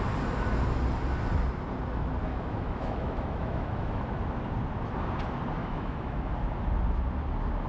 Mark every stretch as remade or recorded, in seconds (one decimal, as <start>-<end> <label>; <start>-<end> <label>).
0.0-2.3 recorded; 2.3-4.0 remade; 4.0-5.6 recorded; 5.6-6.3 remade; 6.3-7.7 recorded